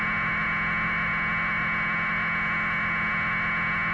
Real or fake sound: real